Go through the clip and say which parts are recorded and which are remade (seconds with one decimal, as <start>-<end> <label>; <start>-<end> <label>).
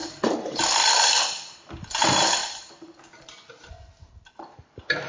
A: 0.0-0.6 remade; 0.6-2.4 recorded; 2.4-3.5 remade; 3.5-5.1 recorded